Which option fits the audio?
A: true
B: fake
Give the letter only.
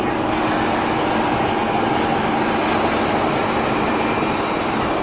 A